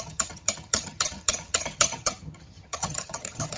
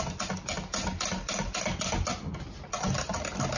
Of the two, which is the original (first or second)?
second